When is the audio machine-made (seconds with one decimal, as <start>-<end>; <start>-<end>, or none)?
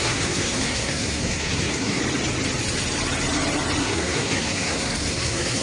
0.0-2.0; 3.8-5.6